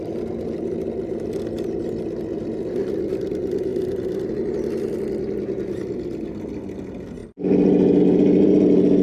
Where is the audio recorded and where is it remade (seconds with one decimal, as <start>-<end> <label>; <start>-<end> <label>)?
0.0-9.0 recorded